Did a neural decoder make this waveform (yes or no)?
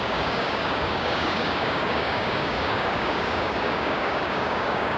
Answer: yes